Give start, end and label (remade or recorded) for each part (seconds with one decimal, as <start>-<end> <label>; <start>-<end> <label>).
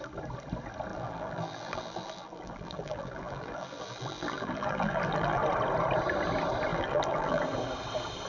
0.0-0.9 recorded; 0.9-5.4 remade; 5.4-6.7 recorded; 6.7-7.4 remade; 7.4-8.3 recorded